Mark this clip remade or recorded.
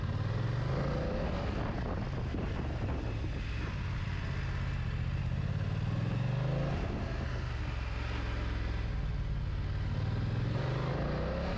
recorded